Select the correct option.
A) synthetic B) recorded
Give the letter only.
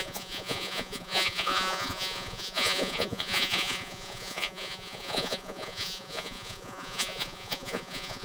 A